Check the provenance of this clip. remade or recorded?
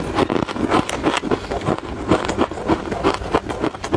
recorded